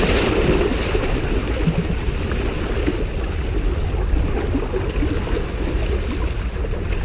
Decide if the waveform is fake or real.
real